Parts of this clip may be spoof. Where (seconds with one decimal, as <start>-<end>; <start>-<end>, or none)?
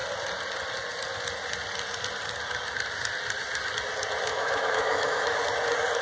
4.3-5.4